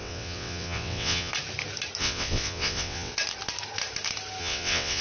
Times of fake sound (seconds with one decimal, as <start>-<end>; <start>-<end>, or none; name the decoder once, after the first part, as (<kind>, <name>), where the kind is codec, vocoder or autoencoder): 0.0-1.3 (vocoder, WaveNeXt); 2.0-3.1; 4.4-5.0